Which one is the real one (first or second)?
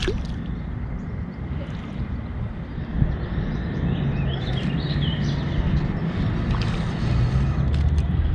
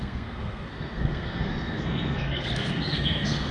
first